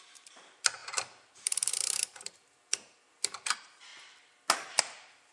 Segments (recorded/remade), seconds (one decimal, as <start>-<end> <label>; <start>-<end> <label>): 0.0-3.9 remade; 3.9-4.8 recorded; 4.8-5.3 remade